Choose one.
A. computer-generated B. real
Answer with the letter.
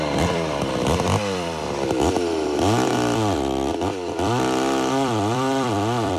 A